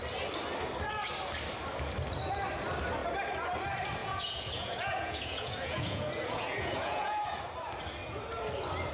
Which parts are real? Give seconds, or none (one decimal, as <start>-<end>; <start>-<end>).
0.0-4.0; 7.4-8.9